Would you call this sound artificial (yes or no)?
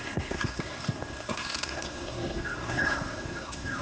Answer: yes